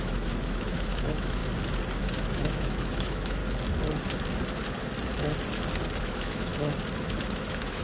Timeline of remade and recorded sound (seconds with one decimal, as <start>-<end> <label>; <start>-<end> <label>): 0.0-1.4 remade; 1.4-2.0 recorded; 2.0-3.4 remade; 3.4-6.0 recorded; 6.0-6.5 remade; 6.5-7.2 recorded; 7.2-7.8 remade